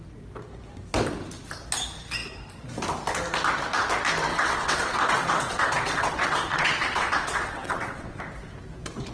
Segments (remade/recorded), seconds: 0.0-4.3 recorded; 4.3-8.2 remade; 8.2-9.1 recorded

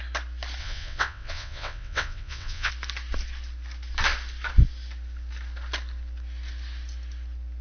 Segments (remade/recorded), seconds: 0.0-0.6 recorded; 0.6-2.7 remade; 2.7-7.6 recorded

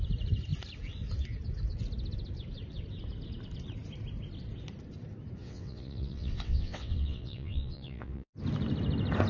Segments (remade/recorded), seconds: 0.0-5.4 recorded; 5.4-8.3 remade; 8.3-9.3 recorded